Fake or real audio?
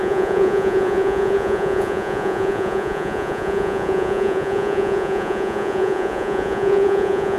fake